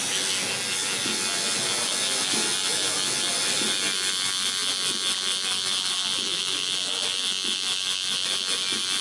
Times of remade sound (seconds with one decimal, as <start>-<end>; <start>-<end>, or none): none